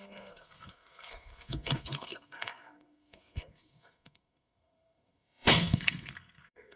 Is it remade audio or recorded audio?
remade